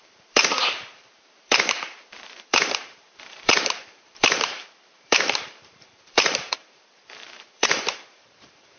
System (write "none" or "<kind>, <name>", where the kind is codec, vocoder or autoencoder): vocoder, BigVGAN v2